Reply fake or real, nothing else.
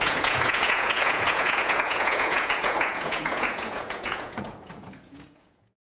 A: fake